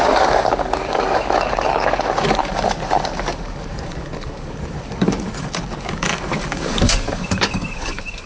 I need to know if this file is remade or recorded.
remade